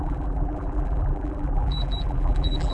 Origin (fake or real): fake